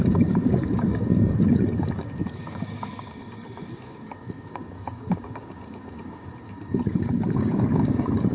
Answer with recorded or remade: remade